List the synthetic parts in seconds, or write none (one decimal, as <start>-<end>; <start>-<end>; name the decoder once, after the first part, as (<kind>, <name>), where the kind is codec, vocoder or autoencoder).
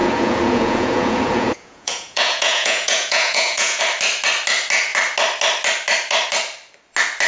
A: 0.0-3.8 (vocoder, Vocos)